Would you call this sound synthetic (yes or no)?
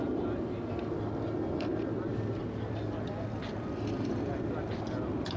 yes